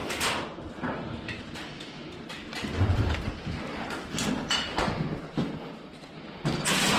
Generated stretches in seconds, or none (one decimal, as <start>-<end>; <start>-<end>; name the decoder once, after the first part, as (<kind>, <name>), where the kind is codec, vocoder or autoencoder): 0.0-3.9 (vocoder, BigVGAN v2)